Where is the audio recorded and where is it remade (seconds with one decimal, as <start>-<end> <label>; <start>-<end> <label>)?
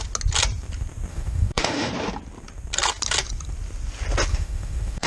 0.0-1.1 recorded; 1.1-1.9 remade; 1.9-4.3 recorded; 4.3-5.1 remade